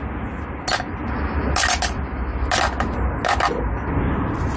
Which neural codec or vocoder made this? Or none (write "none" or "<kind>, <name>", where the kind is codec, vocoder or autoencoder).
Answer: none